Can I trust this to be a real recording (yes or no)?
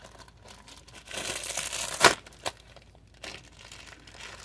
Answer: yes